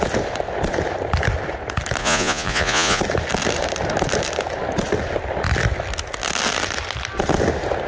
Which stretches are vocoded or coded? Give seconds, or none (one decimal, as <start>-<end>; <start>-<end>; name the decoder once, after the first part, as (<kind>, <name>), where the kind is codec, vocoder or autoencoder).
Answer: 2.0-3.0 (vocoder, Vocos)